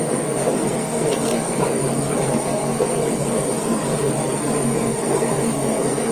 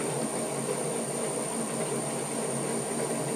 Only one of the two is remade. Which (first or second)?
first